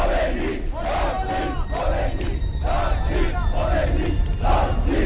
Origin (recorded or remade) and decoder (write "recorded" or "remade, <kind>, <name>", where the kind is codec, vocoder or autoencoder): recorded